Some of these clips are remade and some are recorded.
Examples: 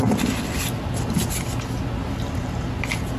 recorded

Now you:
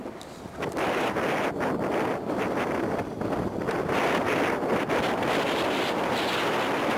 recorded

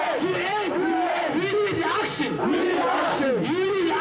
recorded